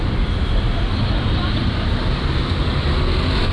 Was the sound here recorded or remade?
recorded